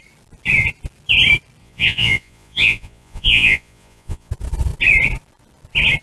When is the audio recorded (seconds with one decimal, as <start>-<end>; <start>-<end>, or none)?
0.0-1.6; 4.3-6.0